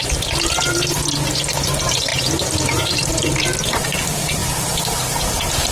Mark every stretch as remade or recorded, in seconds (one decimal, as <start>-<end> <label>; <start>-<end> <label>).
0.0-4.4 remade; 4.4-5.2 recorded; 5.2-5.7 remade